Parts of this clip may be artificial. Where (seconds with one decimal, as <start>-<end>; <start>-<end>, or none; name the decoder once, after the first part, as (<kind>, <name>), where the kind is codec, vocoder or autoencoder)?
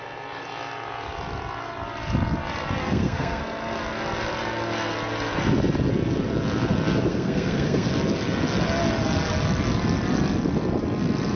2.8-3.4 (codec, SNAC); 7.1-7.9